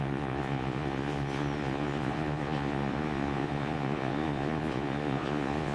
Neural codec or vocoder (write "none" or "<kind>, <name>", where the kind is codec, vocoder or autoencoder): vocoder, Vocos